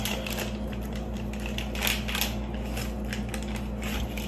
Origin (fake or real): real